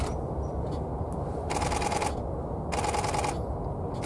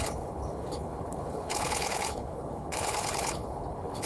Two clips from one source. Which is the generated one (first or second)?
second